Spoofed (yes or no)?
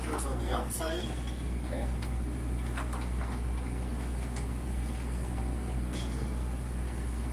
yes